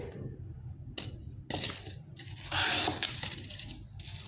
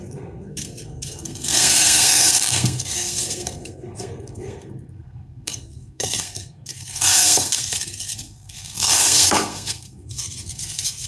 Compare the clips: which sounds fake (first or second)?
second